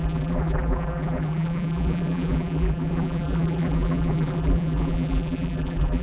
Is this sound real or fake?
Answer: fake